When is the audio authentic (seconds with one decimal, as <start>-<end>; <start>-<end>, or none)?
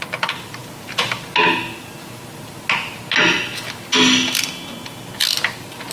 0.0-5.9